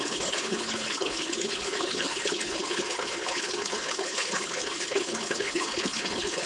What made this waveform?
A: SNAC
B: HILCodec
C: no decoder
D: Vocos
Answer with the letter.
B